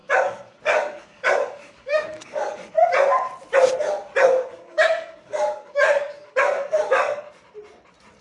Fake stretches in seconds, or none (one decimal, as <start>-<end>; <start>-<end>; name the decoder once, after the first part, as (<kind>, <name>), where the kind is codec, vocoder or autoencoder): 0.0-2.7 (codec, DAC); 4.2-7.3